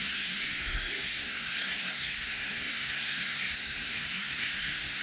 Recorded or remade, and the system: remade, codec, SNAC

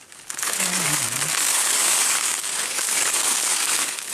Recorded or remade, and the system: remade, codec, DAC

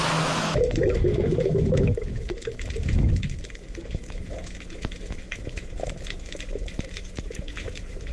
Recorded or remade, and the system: remade, autoencoder, DAC-VAE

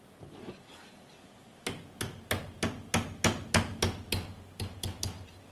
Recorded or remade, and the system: recorded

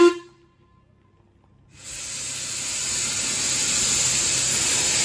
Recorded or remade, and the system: recorded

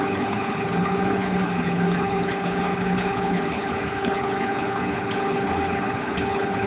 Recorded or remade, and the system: remade, codec, HILCodec